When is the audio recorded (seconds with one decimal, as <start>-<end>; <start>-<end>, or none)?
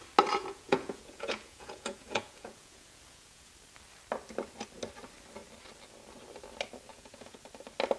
0.0-0.4; 3.5-6.9; 7.4-8.0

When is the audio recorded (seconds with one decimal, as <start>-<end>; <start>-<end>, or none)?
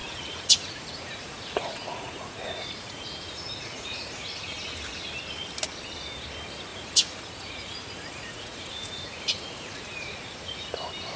4.5-6.7; 10.7-11.2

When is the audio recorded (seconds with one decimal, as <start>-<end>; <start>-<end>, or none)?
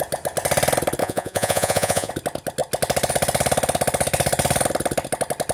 0.0-1.0; 2.1-5.5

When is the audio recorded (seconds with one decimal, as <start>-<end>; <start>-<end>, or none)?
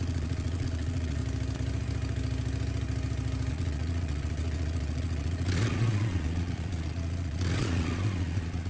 1.2-3.5